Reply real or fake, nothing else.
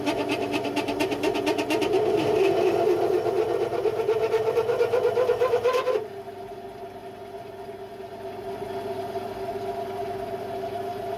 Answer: real